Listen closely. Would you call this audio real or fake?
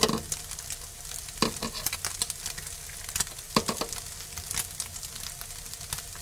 real